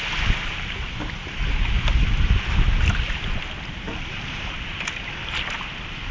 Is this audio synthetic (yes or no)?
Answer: no